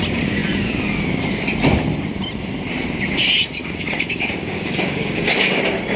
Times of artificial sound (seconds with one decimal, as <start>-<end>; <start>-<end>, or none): 3.6-5.6